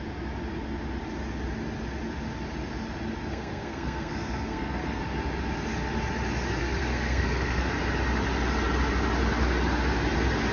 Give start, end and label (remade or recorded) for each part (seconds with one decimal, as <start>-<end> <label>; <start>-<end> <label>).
0.0-3.3 recorded; 3.3-5.0 remade; 5.0-6.6 recorded; 6.6-7.7 remade; 7.7-10.5 recorded